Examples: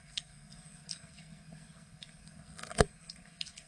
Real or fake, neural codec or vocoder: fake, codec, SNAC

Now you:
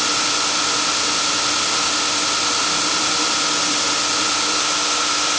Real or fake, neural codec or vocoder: real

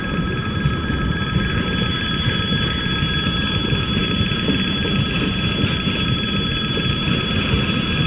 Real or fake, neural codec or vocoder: fake, vocoder, BigVGAN v2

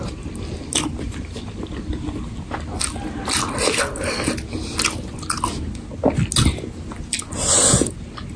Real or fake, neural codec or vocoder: real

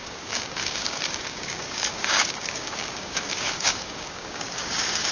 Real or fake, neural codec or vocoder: fake, codec, DAC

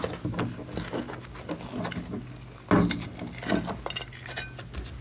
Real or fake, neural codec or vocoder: real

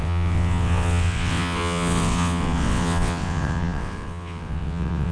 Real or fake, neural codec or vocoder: fake, vocoder, WaveNeXt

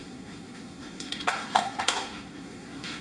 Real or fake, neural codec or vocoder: fake, codec, SNAC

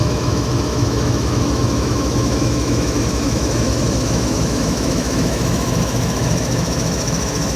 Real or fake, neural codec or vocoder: fake, autoencoder, DAC-VAE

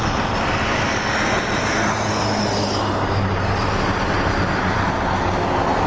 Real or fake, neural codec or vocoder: real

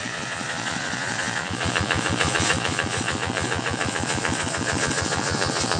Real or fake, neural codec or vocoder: fake, vocoder, Vocos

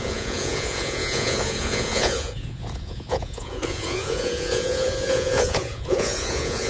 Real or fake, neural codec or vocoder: fake, vocoder, Vocos